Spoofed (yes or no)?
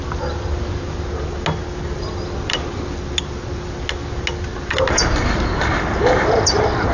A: no